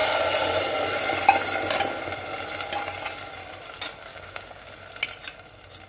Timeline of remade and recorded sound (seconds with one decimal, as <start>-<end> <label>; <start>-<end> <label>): 0.0-4.1 recorded; 4.1-4.7 remade; 4.7-5.9 recorded